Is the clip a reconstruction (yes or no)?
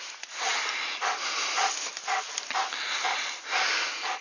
no